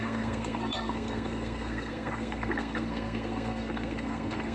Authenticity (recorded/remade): remade